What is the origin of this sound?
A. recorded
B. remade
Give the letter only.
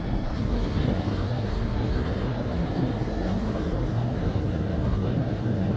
B